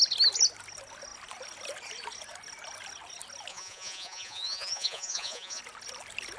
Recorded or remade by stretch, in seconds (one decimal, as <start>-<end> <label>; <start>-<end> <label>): 0.0-3.5 recorded; 3.5-5.6 remade; 5.6-6.4 recorded